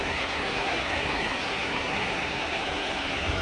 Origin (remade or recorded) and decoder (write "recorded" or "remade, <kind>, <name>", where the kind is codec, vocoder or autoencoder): remade, codec, SNAC